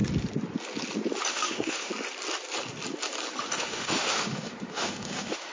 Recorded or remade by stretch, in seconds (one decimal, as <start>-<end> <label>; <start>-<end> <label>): 0.0-1.3 recorded; 1.3-1.9 remade; 1.9-3.6 recorded; 3.6-5.5 remade

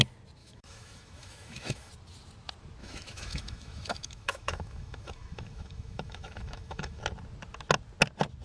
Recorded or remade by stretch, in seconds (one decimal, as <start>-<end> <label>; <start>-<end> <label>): 0.0-0.4 recorded; 0.4-1.9 remade; 1.9-2.8 recorded; 2.8-7.0 remade; 7.0-8.4 recorded

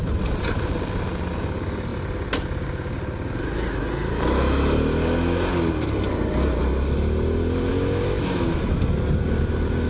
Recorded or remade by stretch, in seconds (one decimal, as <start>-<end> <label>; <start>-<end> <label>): 0.0-7.7 recorded; 7.7-8.7 remade; 8.7-9.9 recorded

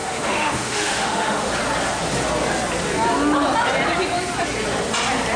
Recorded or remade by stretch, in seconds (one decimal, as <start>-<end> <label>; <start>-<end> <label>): 0.0-1.5 remade; 1.5-5.4 recorded

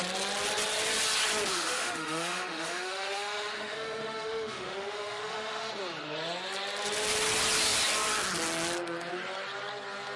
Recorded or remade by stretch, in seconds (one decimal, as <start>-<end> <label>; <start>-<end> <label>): 0.0-1.5 recorded; 1.5-5.7 remade; 5.7-10.2 recorded

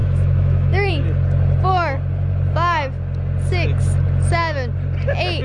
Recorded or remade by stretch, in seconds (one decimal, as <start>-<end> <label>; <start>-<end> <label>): 0.0-0.9 remade; 0.9-5.4 recorded